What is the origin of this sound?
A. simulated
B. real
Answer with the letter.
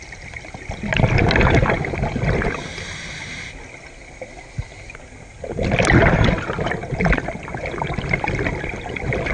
B